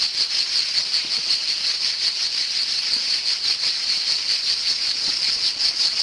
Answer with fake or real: real